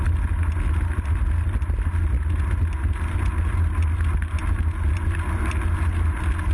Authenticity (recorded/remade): recorded